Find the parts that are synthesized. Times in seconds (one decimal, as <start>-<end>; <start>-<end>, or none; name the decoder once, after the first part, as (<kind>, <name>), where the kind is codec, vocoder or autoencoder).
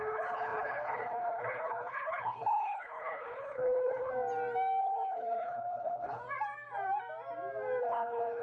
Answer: 0.0-4.1 (codec, HILCodec); 4.8-6.2; 7.8-8.4